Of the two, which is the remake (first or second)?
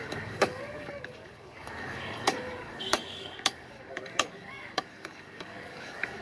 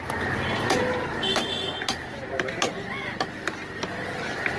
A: first